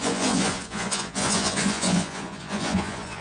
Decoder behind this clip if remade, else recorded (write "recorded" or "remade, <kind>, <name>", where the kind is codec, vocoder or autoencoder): remade, vocoder, Vocos